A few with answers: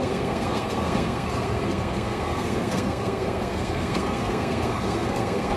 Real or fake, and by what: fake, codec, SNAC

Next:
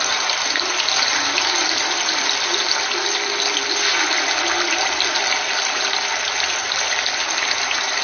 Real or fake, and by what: real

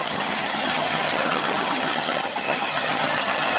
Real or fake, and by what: fake, vocoder, HiFi-GAN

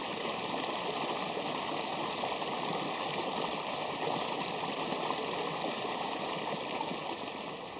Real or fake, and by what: real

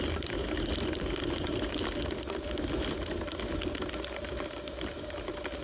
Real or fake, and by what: real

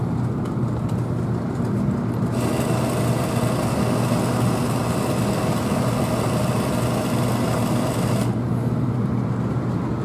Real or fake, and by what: real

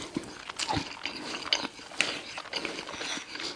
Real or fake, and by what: real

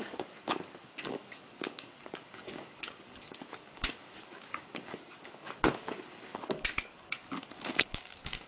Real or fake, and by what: fake, codec, DAC